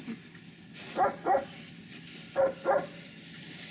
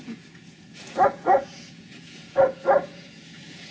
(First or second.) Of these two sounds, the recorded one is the first